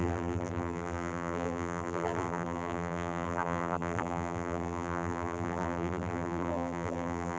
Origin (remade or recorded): remade